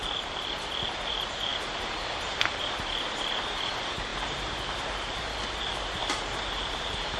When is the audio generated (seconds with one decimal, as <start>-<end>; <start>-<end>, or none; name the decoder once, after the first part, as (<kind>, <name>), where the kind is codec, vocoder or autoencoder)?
0.0-7.2 (vocoder, BigVGAN v2)